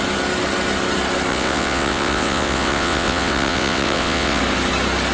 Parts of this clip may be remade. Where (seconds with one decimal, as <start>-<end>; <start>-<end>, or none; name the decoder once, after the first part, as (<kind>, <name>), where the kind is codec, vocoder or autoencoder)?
1.3-4.4 (vocoder, WaveNeXt)